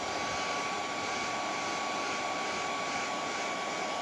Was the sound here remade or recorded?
recorded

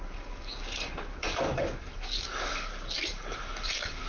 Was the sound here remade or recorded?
remade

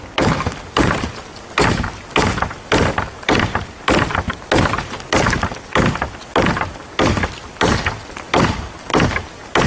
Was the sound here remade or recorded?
recorded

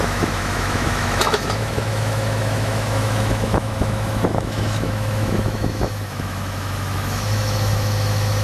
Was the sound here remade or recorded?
remade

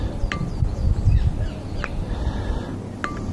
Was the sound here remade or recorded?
recorded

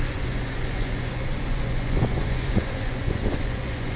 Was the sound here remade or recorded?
remade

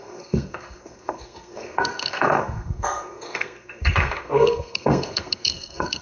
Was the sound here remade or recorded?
remade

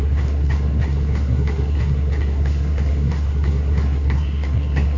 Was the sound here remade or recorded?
remade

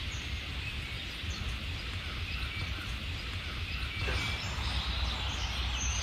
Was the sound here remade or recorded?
recorded